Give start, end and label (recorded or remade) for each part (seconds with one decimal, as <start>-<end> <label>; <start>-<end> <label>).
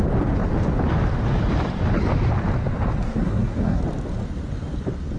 0.0-3.0 recorded; 3.0-3.8 remade; 3.8-5.2 recorded